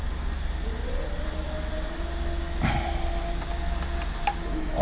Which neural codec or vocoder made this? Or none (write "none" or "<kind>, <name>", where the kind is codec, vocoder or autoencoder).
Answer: none